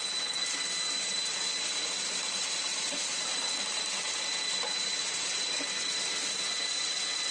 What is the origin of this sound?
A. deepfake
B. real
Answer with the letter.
B